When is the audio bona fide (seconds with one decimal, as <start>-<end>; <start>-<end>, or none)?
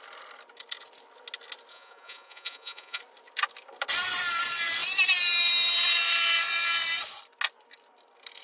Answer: 0.0-1.7; 3.0-8.4